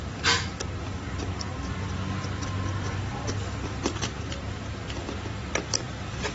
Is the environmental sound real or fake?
real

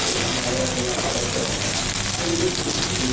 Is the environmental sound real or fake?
real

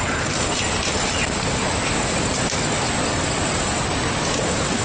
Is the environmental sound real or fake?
real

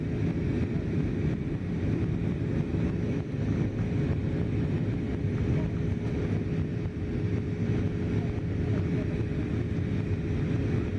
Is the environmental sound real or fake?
real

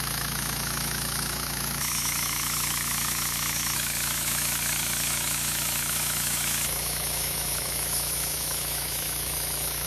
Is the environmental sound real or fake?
fake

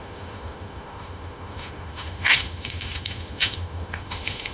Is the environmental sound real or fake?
fake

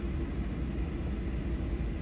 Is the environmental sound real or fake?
real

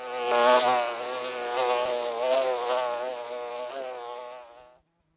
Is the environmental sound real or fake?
real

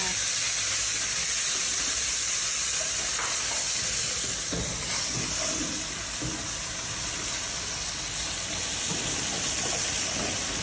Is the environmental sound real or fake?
real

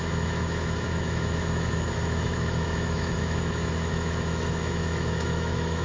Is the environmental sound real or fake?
fake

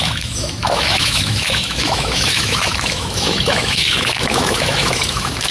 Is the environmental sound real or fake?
fake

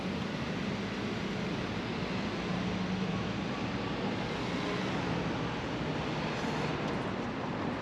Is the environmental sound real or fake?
real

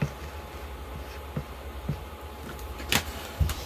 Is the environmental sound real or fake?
real